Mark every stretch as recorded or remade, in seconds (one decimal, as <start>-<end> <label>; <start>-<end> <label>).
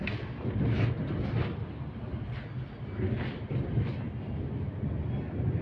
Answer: 0.0-5.6 recorded